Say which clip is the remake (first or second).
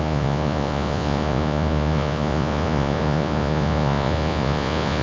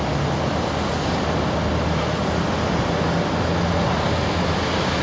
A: first